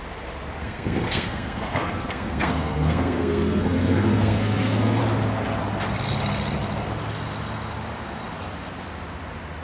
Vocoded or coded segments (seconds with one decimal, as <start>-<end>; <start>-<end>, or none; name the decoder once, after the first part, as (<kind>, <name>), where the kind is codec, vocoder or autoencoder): 0.6-5.0 (codec, SNAC)